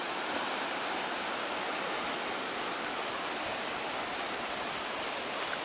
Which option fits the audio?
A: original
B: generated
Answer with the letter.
A